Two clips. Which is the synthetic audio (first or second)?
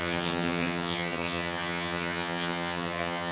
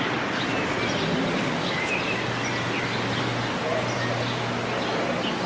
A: first